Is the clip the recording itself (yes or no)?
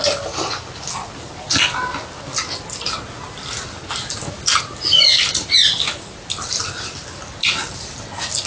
yes